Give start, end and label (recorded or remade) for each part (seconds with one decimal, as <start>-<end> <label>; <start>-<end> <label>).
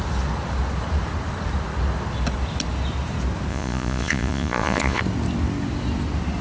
0.0-3.5 recorded; 3.5-5.0 remade; 5.0-6.4 recorded